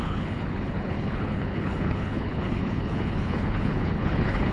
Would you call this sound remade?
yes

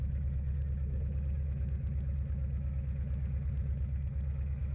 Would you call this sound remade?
yes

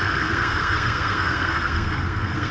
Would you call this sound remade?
yes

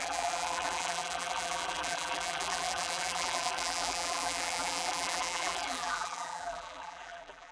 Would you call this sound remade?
yes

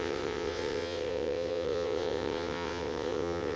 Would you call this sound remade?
yes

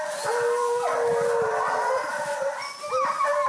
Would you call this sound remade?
no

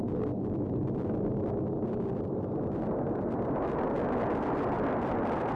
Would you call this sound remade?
no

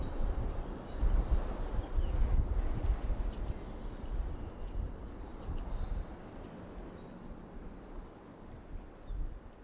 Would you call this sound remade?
no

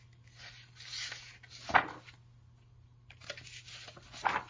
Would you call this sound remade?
no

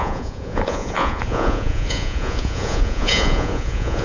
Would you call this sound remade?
yes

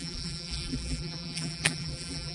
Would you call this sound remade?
yes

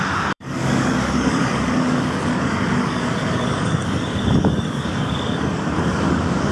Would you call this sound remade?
yes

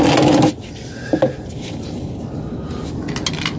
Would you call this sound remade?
no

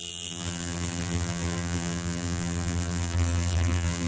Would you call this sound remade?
yes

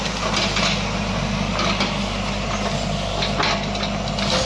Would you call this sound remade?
no